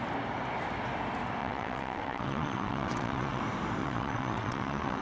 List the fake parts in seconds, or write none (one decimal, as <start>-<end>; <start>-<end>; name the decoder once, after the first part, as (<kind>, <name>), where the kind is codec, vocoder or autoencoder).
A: 1.4-3.4 (vocoder, WaveNeXt); 3.8-5.0